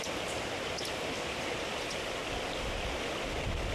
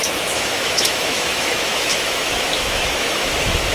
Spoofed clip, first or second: second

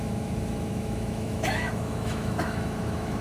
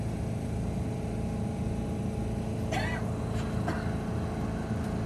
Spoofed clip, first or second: first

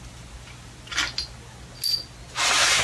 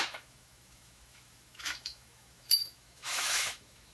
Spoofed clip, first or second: second